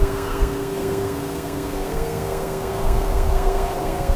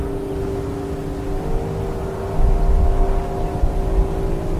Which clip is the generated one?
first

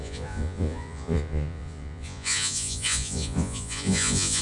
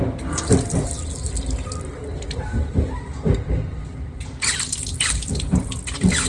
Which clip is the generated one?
first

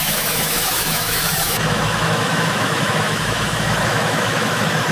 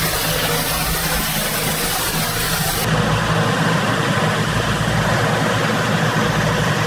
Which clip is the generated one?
first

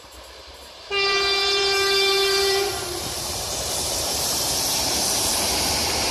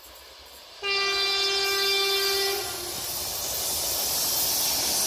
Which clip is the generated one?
first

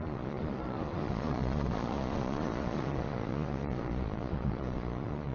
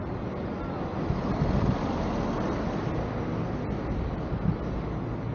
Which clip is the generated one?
first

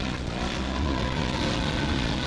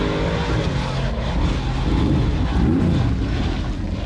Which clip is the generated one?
first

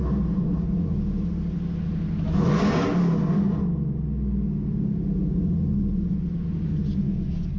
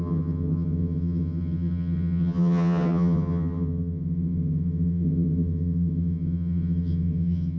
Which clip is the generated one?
second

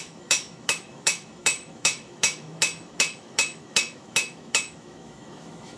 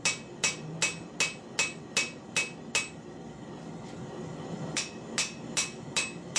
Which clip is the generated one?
first